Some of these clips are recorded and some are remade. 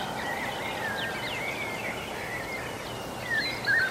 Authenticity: recorded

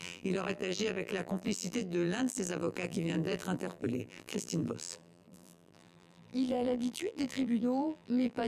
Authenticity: remade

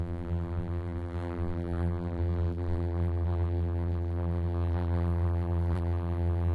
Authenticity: remade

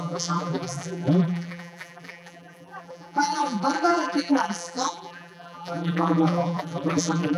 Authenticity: remade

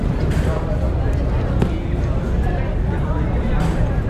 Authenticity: recorded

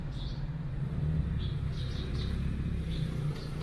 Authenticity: remade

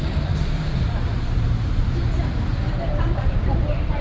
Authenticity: remade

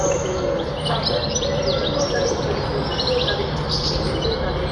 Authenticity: recorded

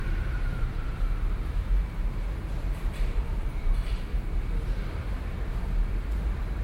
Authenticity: remade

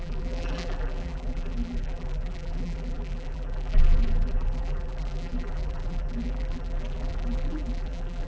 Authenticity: remade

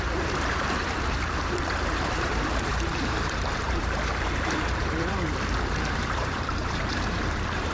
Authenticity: remade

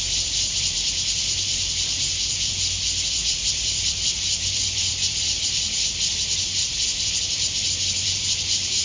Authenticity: remade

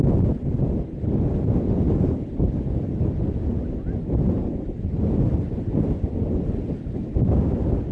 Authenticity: recorded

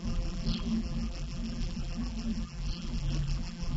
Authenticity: remade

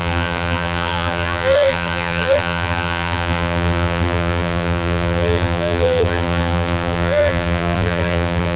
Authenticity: remade